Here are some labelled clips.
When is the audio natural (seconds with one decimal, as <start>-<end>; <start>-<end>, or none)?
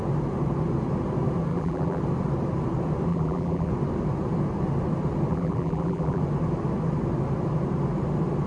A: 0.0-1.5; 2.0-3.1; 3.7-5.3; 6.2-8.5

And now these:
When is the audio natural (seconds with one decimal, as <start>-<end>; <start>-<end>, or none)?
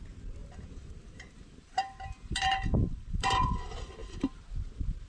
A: 0.0-0.4; 3.5-4.0; 4.5-5.1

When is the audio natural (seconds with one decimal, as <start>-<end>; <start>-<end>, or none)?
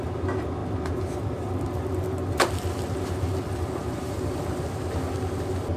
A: 0.0-3.8; 4.4-5.8